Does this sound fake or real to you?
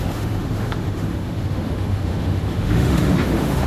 fake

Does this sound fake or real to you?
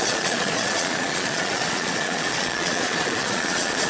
fake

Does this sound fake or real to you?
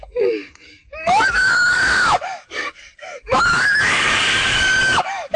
fake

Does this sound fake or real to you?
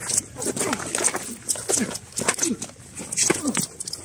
real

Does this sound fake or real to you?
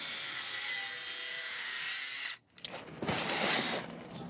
real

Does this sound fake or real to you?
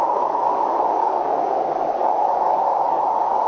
fake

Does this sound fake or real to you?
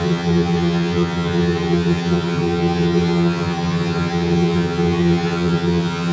fake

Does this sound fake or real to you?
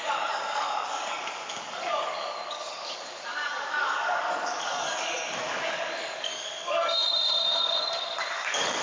fake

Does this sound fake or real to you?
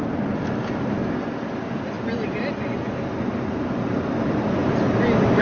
real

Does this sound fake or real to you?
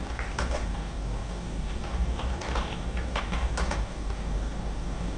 fake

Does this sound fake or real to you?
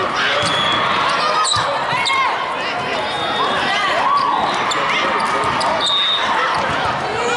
real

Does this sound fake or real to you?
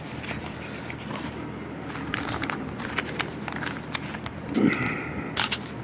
real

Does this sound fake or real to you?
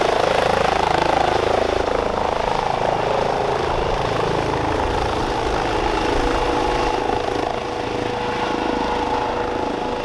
real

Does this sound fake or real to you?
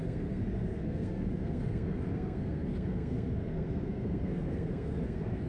fake